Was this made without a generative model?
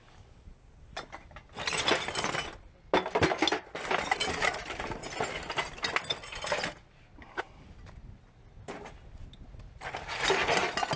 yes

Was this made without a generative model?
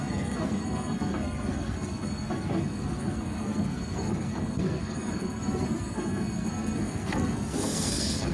no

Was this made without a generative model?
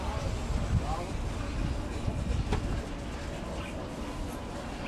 yes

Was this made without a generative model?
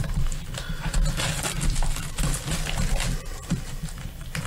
yes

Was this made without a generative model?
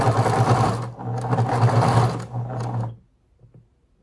yes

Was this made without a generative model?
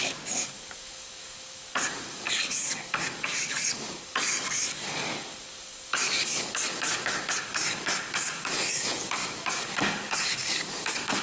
no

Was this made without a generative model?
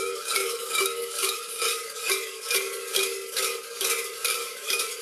no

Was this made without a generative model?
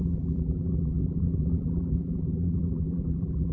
no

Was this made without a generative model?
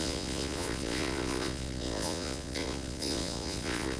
no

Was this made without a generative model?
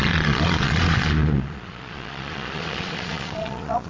no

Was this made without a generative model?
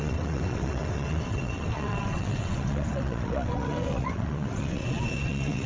no